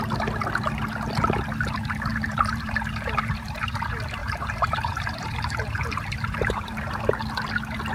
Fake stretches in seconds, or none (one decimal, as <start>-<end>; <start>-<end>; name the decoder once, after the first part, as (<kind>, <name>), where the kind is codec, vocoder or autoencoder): 2.1-3.8 (vocoder, BigVGAN v2); 4.2-7.0

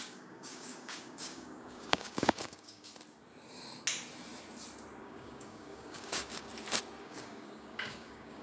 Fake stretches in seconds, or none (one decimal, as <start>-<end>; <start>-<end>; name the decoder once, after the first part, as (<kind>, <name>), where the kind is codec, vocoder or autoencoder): 0.0-2.9 (codec, DAC); 5.0-6.5; 7.0-8.4

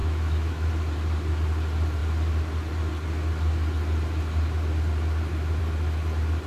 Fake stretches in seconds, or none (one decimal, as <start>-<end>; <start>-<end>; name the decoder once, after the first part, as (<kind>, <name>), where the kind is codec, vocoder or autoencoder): 0.0-0.7 (autoencoder, DAC-VAE)